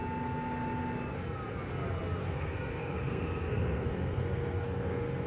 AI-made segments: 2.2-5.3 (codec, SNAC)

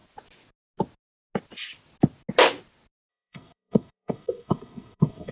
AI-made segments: 3.1-5.3 (codec, SNAC)

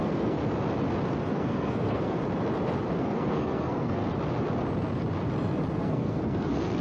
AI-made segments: 0.0-0.4 (codec, SNAC); 1.3-2.2; 3.0-4.0; 5.7-6.8

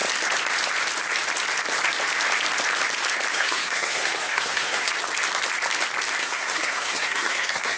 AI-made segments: 3.3-4.9 (codec, SNAC); 6.2-7.8

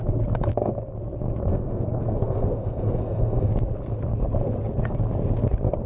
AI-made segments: 1.5-3.5 (codec, SNAC)